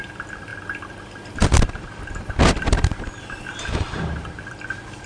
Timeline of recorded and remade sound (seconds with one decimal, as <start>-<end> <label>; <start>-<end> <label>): 0.0-5.1 recorded